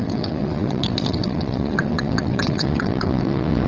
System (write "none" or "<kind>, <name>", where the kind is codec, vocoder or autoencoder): vocoder, WaveNeXt